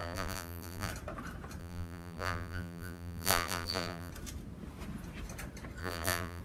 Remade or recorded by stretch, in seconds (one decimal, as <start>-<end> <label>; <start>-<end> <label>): 0.0-0.9 remade; 0.9-1.6 recorded; 1.6-4.1 remade; 4.1-5.8 recorded; 5.8-6.4 remade